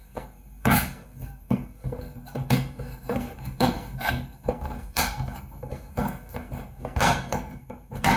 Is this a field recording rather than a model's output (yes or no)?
no